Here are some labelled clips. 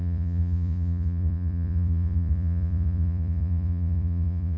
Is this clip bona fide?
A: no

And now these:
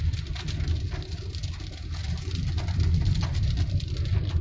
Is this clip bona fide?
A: yes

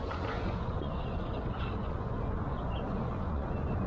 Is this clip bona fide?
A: no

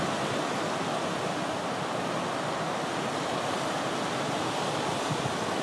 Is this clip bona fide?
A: yes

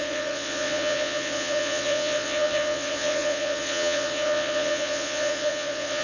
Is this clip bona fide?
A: no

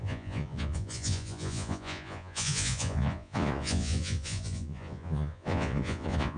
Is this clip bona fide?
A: no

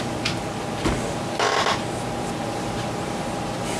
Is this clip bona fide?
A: yes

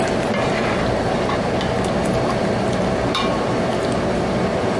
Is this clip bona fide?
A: yes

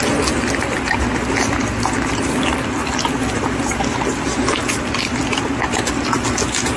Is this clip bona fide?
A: yes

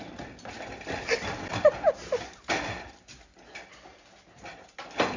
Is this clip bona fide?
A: yes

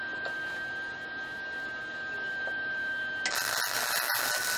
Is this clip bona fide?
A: yes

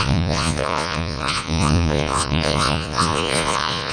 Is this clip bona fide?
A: no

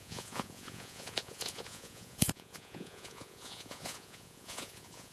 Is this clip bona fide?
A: no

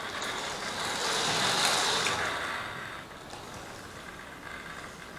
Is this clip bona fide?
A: yes